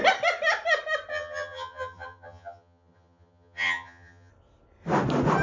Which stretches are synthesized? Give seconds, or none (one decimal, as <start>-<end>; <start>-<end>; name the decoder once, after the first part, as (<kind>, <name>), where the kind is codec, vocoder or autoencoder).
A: 1.1-4.3 (vocoder, HiFi-GAN)